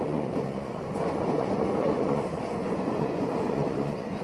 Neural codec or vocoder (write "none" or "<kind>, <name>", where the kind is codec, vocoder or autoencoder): vocoder, Vocos